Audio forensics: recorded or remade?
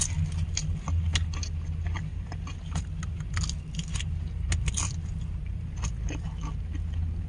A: recorded